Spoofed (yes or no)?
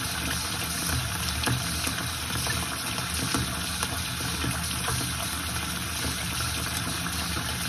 no